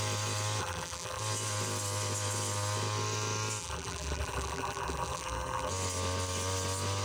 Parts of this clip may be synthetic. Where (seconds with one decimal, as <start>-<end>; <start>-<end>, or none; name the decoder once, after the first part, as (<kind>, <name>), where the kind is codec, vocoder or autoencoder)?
0.6-1.2 (vocoder, BigVGAN v2); 3.6-5.7